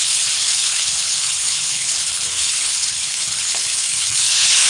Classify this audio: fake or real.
fake